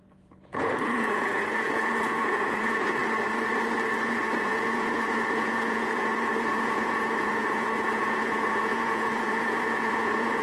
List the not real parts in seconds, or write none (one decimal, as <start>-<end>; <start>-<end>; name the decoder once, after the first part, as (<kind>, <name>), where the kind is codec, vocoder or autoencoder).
0.0-3.0 (vocoder, Vocos); 4.4-6.1; 6.6-10.4